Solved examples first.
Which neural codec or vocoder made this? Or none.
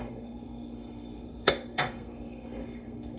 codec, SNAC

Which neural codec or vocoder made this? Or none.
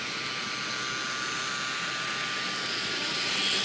none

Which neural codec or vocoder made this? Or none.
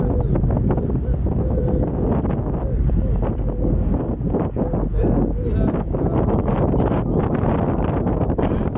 none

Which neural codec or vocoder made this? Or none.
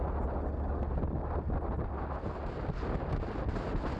none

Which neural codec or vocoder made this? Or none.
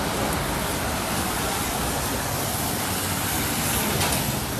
none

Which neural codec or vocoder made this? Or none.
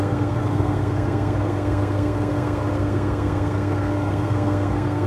codec, SNAC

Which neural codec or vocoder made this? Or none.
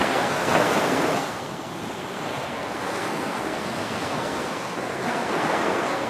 codec, SNAC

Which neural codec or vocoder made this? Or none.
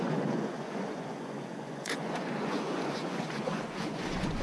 vocoder, Vocos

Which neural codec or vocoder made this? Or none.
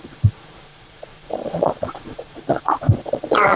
vocoder, Vocos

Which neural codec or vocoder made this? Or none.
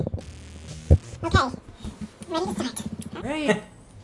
none